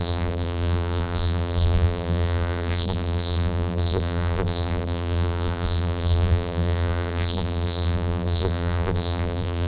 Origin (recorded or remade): remade